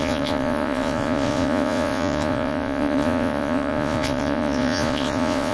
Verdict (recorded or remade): remade